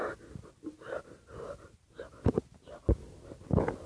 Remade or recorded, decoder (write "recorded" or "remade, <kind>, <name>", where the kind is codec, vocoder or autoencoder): recorded